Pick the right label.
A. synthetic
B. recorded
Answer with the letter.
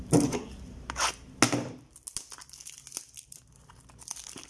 B